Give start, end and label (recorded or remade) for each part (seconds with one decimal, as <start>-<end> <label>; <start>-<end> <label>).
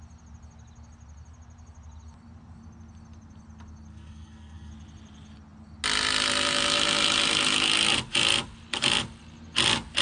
0.0-3.9 recorded; 3.9-4.7 remade; 4.7-10.0 recorded